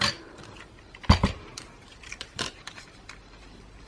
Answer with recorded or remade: remade